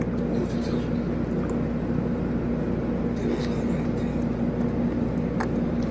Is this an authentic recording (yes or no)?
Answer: yes